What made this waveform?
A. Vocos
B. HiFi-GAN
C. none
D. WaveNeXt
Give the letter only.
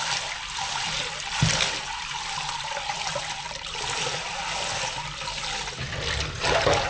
C